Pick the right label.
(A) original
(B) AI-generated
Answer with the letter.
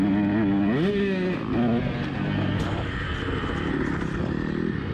A